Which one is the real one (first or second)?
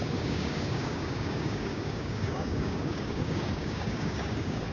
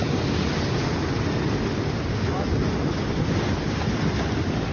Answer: second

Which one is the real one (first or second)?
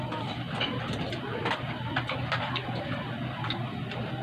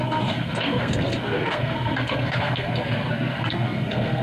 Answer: first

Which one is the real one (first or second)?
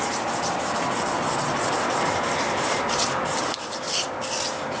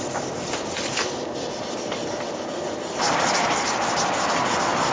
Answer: first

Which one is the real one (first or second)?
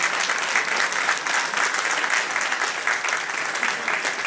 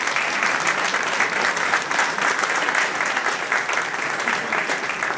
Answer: first